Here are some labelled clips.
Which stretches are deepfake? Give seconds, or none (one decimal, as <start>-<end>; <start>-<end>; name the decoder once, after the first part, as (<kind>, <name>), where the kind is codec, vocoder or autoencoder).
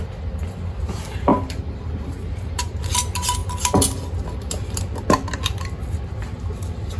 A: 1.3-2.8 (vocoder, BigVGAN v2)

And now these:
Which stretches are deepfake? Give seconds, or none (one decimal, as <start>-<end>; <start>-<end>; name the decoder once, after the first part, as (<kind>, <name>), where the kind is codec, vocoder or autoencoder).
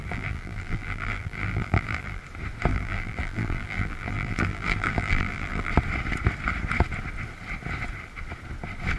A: 0.0-2.2 (vocoder, BigVGAN v2); 2.7-5.7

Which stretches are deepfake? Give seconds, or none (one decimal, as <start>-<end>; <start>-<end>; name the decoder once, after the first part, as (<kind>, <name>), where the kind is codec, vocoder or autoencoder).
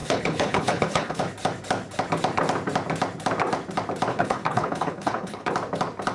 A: 0.0-1.2 (codec, HILCodec); 4.1-5.5